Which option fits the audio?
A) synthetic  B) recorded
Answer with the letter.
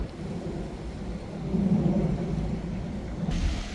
A